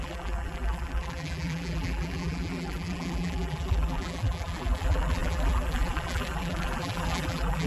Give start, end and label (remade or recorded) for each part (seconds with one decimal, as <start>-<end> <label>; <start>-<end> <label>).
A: 0.0-7.7 remade